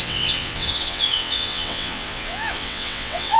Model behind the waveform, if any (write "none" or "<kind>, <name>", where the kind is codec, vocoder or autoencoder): vocoder, WaveNeXt